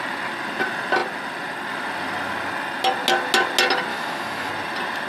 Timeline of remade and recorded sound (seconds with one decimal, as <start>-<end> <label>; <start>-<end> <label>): 0.0-3.9 recorded; 3.9-4.5 remade; 4.5-5.1 recorded